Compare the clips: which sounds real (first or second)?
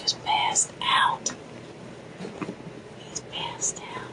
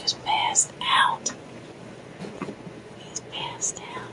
first